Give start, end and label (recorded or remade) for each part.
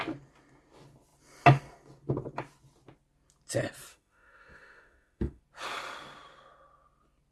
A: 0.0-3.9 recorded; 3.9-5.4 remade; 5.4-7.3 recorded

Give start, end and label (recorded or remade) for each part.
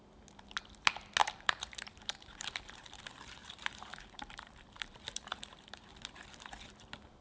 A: 0.0-1.2 recorded; 1.2-3.0 remade; 3.0-3.4 recorded; 3.4-5.9 remade; 5.9-7.2 recorded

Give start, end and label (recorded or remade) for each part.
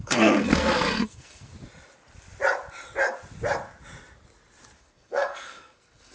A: 0.0-1.5 remade; 1.5-4.8 recorded; 4.8-6.1 remade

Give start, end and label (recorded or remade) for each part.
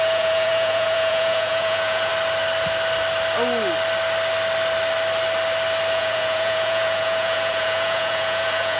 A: 0.0-2.1 remade; 2.1-5.9 recorded; 5.9-8.8 remade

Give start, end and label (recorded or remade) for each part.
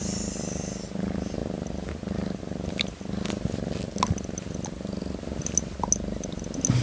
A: 0.0-6.8 recorded